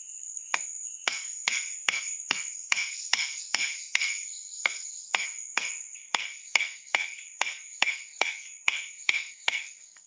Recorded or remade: remade